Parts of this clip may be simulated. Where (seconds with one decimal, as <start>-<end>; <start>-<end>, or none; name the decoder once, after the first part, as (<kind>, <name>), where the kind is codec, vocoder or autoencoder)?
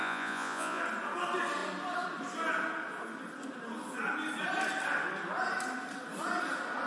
0.0-0.8 (vocoder, Vocos)